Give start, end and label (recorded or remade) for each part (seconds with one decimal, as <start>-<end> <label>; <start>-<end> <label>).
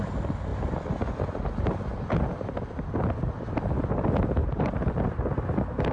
0.0-4.4 recorded; 4.4-4.9 remade; 4.9-5.9 recorded